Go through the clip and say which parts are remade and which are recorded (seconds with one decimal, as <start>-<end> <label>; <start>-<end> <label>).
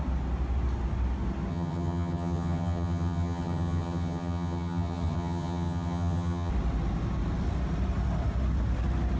0.0-1.5 recorded; 1.5-6.5 remade; 6.5-9.2 recorded